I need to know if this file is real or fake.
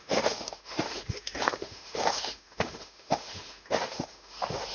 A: fake